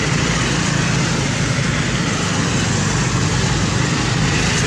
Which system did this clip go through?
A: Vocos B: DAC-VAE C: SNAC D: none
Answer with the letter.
D